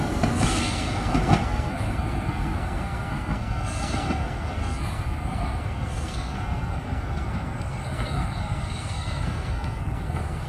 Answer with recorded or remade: remade